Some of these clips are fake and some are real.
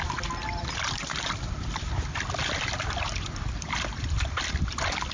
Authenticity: real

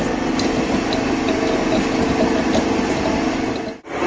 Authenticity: real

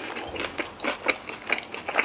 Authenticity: real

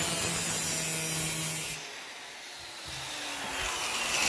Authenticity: real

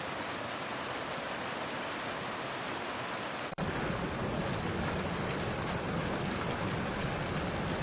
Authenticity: real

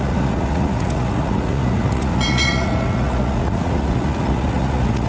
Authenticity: fake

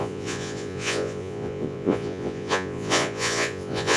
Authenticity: fake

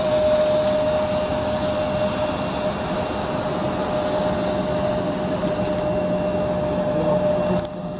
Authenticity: real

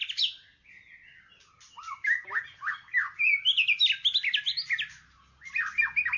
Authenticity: real